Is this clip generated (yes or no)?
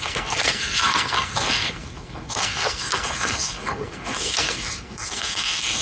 yes